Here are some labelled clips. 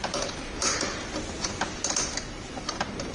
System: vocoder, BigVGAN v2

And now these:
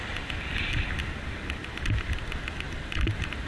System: none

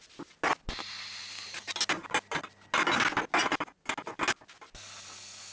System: none